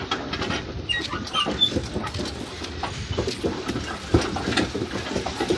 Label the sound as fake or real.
real